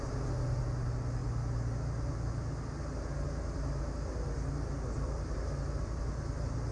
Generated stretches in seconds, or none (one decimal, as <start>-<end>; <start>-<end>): none